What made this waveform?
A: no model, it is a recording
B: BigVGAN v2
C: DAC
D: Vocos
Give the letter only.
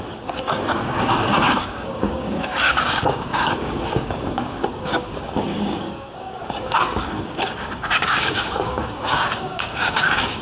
C